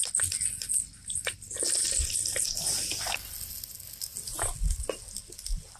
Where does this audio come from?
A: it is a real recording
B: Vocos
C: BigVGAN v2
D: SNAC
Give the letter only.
A